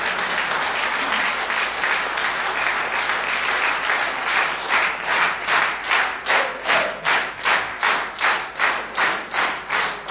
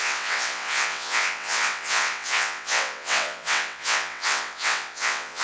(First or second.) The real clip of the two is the first